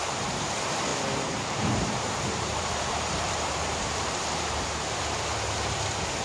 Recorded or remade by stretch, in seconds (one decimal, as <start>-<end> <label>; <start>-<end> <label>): 0.0-0.9 recorded; 0.9-4.6 remade; 4.6-6.2 recorded